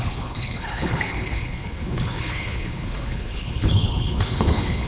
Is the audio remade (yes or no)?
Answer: yes